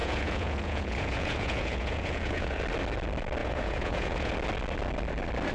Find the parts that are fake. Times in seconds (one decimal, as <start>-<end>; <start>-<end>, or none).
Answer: 0.0-2.6; 3.4-4.3